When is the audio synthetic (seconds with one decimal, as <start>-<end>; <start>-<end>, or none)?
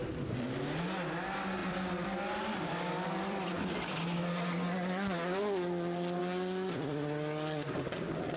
1.6-4.0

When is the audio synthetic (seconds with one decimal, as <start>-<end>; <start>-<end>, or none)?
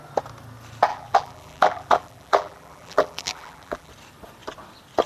0.9-3.9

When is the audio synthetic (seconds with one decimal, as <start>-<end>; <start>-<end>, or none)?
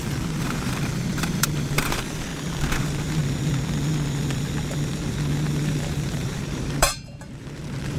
0.0-2.3; 2.8-3.2; 5.6-8.0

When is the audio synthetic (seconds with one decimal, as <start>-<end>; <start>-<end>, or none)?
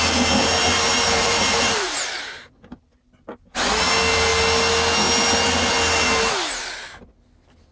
0.6-2.8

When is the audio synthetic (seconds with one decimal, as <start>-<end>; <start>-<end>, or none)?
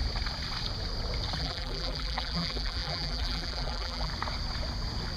1.4-4.1